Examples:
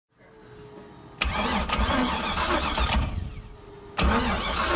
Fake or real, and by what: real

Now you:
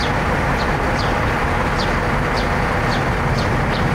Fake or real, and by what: fake, vocoder, BigVGAN v2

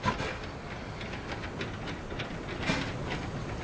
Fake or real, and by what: real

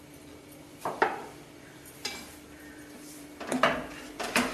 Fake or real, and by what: fake, vocoder, BigVGAN v2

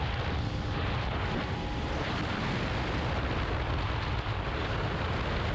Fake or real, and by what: real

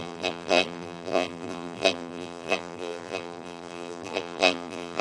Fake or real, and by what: fake, vocoder, BigVGAN v2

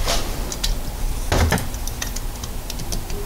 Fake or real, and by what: real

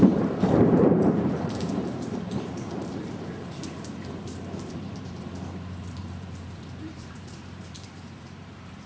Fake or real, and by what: fake, vocoder, BigVGAN v2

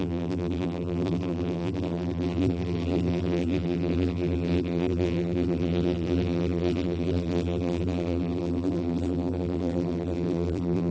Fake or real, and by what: fake, vocoder, BigVGAN v2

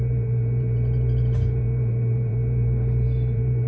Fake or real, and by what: fake, vocoder, BigVGAN v2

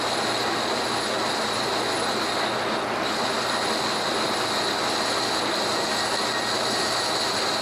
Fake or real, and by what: real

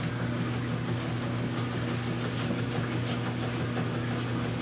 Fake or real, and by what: real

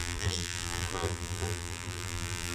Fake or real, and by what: fake, vocoder, BigVGAN v2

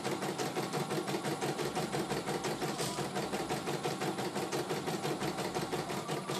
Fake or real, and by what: fake, vocoder, BigVGAN v2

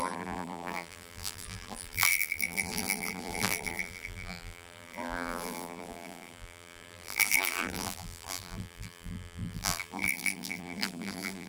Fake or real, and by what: fake, vocoder, BigVGAN v2